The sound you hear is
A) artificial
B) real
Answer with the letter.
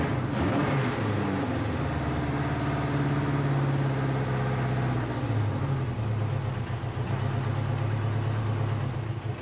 B